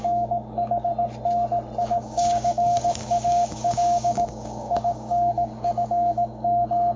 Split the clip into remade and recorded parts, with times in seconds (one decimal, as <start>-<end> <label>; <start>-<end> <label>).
0.0-0.9 remade; 0.9-1.8 recorded; 1.8-7.0 remade